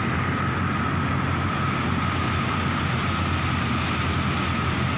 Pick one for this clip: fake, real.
real